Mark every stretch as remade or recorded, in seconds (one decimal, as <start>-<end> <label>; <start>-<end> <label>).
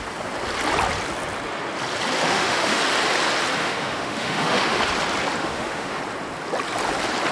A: 0.0-2.2 recorded; 2.2-2.8 remade; 2.8-3.6 recorded; 3.6-4.8 remade; 4.8-5.4 recorded; 5.4-6.0 remade; 6.0-7.3 recorded